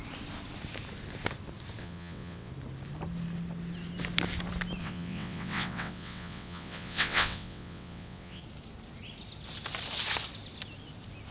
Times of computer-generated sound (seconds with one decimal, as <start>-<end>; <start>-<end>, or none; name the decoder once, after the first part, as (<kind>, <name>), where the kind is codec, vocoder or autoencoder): 1.8-2.5 (vocoder, WaveNeXt); 4.8-8.4